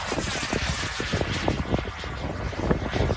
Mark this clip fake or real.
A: real